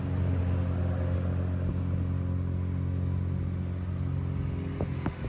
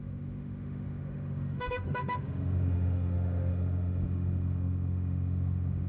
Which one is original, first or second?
first